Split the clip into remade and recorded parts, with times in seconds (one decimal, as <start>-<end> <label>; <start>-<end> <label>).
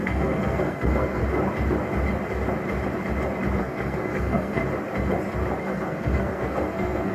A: 0.0-1.2 remade; 1.2-3.6 recorded; 3.6-4.6 remade; 4.6-5.6 recorded; 5.6-7.1 remade